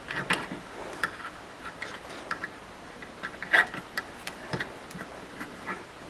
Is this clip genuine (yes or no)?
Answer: yes